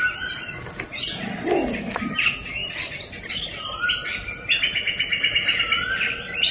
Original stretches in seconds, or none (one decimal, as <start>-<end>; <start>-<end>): 0.0-6.5